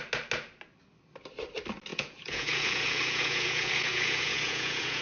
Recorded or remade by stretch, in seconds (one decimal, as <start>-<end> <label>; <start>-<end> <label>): 0.0-1.9 recorded; 1.9-5.0 remade